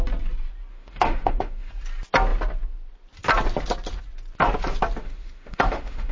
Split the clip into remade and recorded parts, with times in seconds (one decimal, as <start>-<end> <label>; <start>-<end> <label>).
0.0-0.7 recorded; 0.7-1.7 remade; 1.7-5.0 recorded; 5.0-6.1 remade

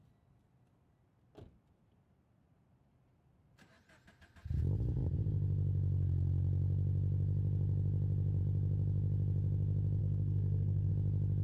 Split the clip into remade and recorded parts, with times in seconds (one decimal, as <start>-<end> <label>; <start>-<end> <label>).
0.0-10.0 recorded; 10.0-10.9 remade; 10.9-11.4 recorded

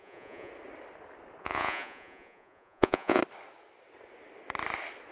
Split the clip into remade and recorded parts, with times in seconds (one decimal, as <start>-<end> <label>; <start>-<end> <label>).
0.0-0.5 remade; 0.5-1.4 recorded; 1.4-3.2 remade; 3.2-5.1 recorded

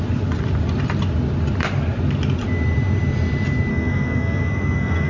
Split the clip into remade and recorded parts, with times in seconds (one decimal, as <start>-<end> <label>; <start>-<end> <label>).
0.0-3.7 recorded; 3.7-5.1 remade

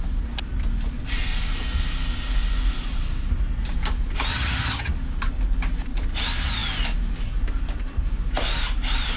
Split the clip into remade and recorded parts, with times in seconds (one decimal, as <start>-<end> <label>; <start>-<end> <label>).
0.0-4.3 recorded; 4.3-4.9 remade; 4.9-9.2 recorded

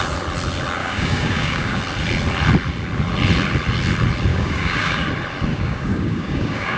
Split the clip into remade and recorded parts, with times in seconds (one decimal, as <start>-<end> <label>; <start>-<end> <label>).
0.0-0.8 recorded; 0.8-1.8 remade; 1.8-4.3 recorded; 4.3-5.1 remade; 5.1-5.5 recorded; 5.5-6.8 remade

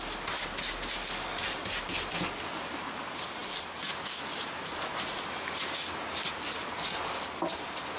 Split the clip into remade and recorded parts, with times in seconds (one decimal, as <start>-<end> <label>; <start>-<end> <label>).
0.0-8.0 recorded

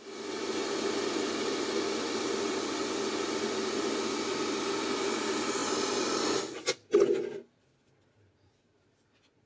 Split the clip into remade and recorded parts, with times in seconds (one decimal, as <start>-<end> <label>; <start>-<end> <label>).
0.0-9.5 recorded